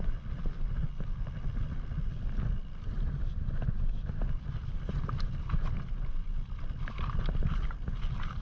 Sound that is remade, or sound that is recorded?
recorded